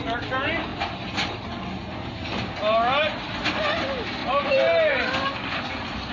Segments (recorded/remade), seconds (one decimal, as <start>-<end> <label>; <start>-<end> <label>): 0.0-4.2 recorded; 4.2-5.3 remade; 5.3-6.1 recorded